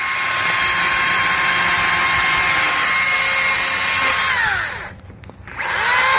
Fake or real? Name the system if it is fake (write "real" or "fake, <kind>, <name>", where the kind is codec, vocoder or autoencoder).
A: real